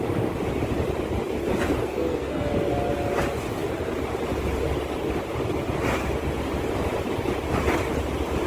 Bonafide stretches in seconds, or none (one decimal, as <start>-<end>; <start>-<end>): 0.0-1.8; 2.5-8.5